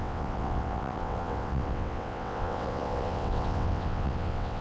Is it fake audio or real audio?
fake